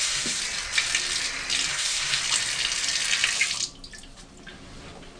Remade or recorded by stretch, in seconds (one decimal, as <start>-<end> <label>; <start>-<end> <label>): 0.0-0.4 remade; 0.4-1.7 recorded; 1.7-2.2 remade; 2.2-5.2 recorded